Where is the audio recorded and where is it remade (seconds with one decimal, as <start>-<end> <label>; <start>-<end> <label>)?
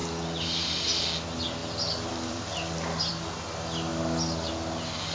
0.0-1.0 remade; 1.0-1.6 recorded; 1.6-3.1 remade; 3.1-5.1 recorded